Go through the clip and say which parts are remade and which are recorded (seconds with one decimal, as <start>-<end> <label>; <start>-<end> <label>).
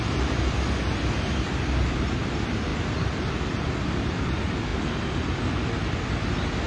0.0-6.7 recorded